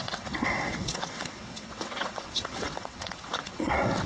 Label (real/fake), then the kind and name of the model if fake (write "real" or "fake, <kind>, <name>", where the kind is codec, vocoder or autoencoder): fake, vocoder, WaveNeXt